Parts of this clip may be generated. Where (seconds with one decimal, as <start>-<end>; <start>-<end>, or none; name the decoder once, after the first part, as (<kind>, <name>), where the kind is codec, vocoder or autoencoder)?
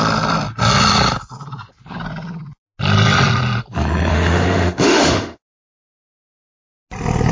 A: 4.1-5.4 (autoencoder, DAC-VAE)